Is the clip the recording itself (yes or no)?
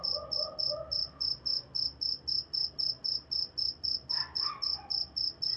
yes